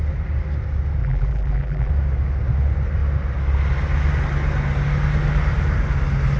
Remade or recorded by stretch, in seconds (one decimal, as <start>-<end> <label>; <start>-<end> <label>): 0.0-1.0 recorded; 1.0-1.9 remade; 1.9-6.4 recorded